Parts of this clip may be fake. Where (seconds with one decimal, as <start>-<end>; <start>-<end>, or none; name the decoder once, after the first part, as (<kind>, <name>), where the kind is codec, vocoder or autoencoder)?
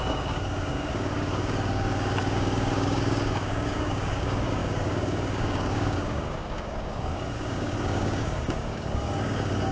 0.0-9.7 (codec, DAC)